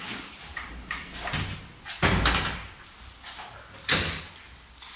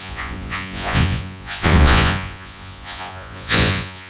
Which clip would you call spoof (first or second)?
second